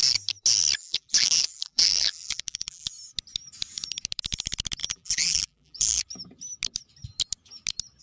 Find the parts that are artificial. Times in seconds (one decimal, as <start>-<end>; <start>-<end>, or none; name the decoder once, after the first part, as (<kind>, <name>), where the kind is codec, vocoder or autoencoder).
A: 0.8-2.9 (vocoder, BigVGAN v2); 4.8-6.0